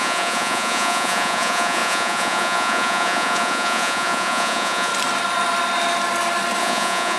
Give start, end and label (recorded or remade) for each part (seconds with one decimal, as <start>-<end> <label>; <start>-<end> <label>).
0.0-4.9 remade; 4.9-6.6 recorded; 6.6-7.2 remade